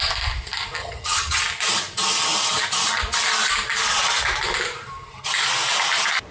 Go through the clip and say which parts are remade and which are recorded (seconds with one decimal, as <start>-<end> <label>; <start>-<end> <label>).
0.0-0.8 recorded; 0.8-1.4 remade; 1.4-6.3 recorded